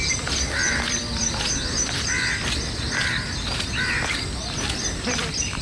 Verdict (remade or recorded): remade